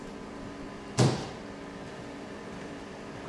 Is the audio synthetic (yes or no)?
yes